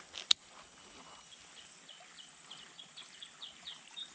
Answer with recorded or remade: recorded